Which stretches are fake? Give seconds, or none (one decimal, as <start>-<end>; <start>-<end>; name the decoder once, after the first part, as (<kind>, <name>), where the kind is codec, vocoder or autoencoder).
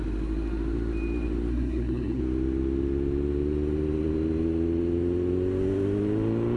1.5-2.2 (codec, SNAC)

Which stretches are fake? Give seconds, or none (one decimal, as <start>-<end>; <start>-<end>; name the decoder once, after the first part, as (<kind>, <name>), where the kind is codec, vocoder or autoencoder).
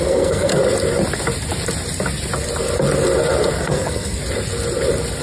0.0-0.5 (codec, SNAC); 3.6-4.2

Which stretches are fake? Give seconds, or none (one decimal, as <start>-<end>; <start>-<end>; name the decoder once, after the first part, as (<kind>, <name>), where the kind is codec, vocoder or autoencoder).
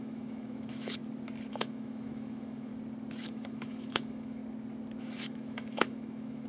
0.0-1.0 (autoencoder, DAC-VAE); 1.5-2.7; 3.2-4.4; 5.0-6.5